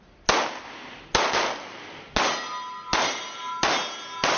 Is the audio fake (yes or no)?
no